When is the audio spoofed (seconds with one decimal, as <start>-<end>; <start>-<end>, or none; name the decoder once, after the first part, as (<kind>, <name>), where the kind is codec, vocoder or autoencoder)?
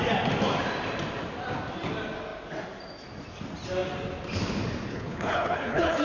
4.9-6.0 (codec, HILCodec)